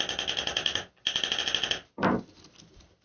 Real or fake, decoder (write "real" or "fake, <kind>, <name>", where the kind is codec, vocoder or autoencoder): real